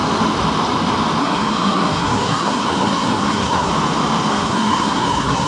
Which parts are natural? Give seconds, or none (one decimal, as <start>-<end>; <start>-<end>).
0.0-1.2; 3.7-4.3